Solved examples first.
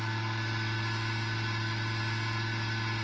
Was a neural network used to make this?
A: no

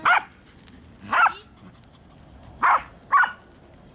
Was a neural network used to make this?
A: no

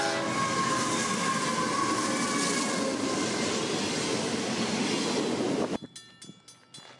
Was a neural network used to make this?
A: no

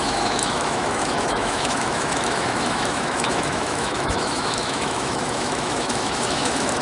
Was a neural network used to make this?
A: yes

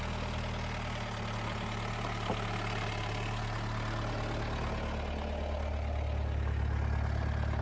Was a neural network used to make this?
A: no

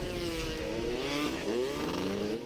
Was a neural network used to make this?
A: yes